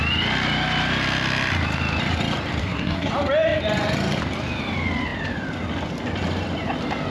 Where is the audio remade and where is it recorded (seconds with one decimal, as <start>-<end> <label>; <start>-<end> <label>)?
0.0-2.6 recorded; 2.6-3.1 remade; 3.1-7.1 recorded

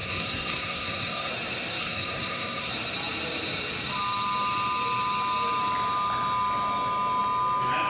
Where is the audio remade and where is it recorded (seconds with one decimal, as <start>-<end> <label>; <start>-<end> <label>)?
0.0-1.3 remade; 1.3-1.8 recorded; 1.8-2.7 remade; 2.7-7.9 recorded

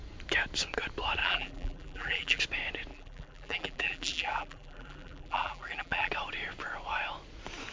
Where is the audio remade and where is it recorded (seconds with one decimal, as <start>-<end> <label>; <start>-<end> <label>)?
0.0-1.2 recorded; 1.2-2.4 remade; 2.4-2.9 recorded; 2.9-6.1 remade; 6.1-7.7 recorded

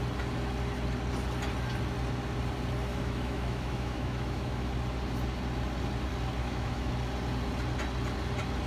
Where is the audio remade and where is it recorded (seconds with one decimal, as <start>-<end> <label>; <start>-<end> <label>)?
0.0-2.9 recorded; 2.9-4.7 remade; 4.7-6.4 recorded; 6.4-6.9 remade; 6.9-8.7 recorded

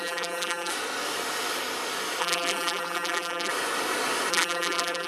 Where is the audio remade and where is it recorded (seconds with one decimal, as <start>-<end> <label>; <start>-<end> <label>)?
0.0-0.7 remade; 0.7-2.2 recorded; 2.2-3.5 remade; 3.5-4.3 recorded; 4.3-5.1 remade

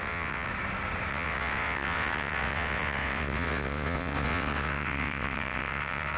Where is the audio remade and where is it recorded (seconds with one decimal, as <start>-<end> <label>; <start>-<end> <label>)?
0.0-0.5 remade; 0.5-1.1 recorded; 1.1-6.2 remade